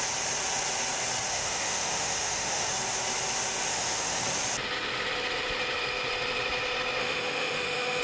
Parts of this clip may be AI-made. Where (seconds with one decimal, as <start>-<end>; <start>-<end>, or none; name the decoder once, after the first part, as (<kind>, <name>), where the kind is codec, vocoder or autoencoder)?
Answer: 1.3-2.7 (autoencoder, DAC-VAE); 3.7-4.2; 7.0-8.0